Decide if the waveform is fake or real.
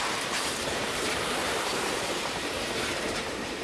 fake